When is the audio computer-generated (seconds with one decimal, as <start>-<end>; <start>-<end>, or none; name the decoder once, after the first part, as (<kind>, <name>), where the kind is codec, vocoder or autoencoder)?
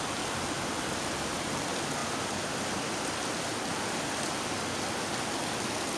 none